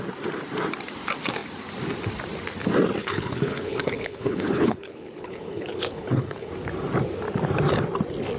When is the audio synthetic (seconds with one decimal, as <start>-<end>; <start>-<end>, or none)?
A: 3.0-6.5